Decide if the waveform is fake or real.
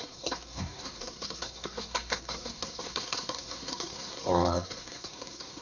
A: fake